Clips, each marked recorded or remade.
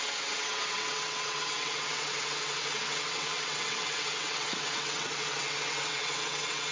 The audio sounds remade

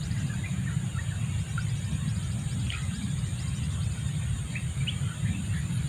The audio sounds recorded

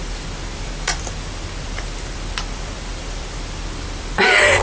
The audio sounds remade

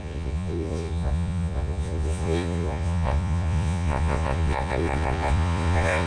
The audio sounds remade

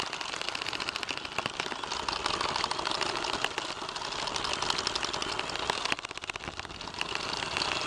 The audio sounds recorded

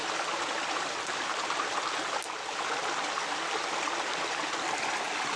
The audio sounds recorded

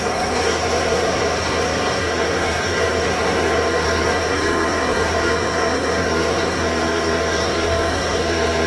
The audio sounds remade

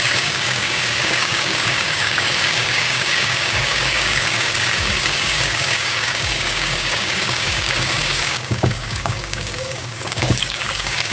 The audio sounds remade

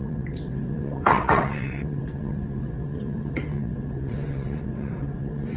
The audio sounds remade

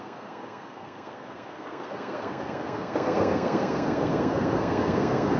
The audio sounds remade